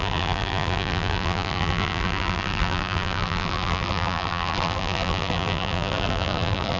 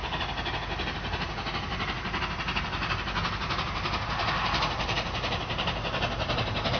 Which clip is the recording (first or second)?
second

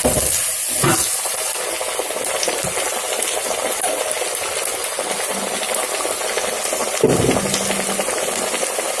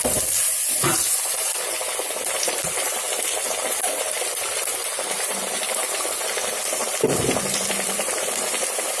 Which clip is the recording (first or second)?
first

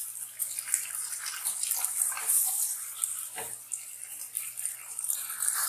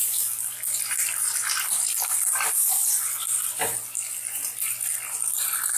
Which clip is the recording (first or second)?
second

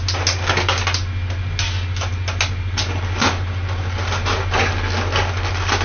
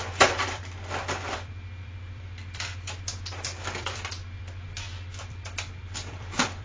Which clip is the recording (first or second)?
first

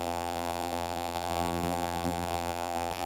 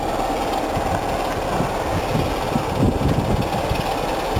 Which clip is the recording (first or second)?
second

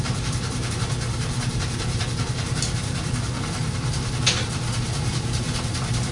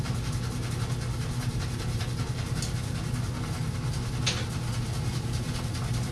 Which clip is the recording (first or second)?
second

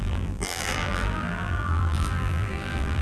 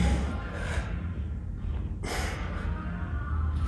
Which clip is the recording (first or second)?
second